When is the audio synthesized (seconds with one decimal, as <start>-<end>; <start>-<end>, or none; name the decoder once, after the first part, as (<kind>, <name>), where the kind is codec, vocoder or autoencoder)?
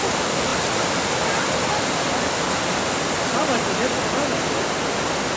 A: none